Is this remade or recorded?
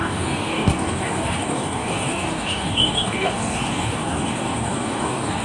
remade